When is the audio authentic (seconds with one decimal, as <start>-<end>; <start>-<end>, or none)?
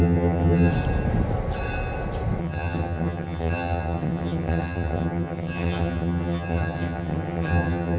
0.7-2.4